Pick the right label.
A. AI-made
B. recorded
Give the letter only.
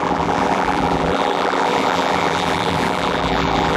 A